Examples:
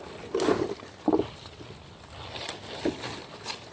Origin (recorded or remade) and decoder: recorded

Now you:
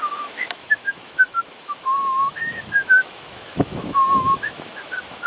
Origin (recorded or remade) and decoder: remade, autoencoder, DAC-VAE